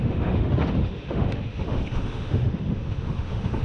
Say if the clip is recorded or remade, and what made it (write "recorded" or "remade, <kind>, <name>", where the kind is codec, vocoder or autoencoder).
remade, autoencoder, DAC-VAE